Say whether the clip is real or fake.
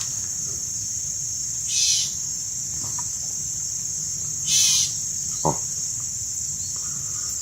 real